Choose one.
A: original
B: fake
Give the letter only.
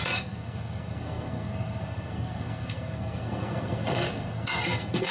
B